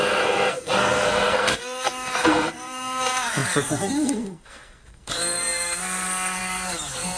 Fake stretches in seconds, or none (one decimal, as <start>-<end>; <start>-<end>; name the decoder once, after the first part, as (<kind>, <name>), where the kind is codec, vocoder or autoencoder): 0.0-7.2 (codec, SNAC)